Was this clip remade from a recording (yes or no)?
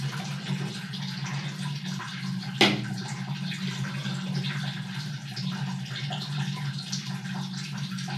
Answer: no